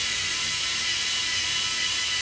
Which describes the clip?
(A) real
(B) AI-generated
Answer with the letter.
A